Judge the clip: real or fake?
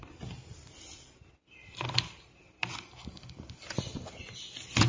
real